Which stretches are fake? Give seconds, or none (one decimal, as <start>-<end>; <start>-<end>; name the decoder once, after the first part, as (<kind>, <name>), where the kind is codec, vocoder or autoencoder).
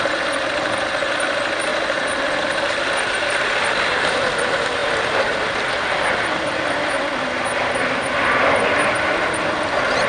none